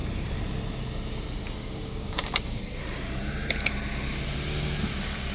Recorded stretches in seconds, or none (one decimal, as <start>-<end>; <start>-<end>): 0.0-1.6; 2.6-5.3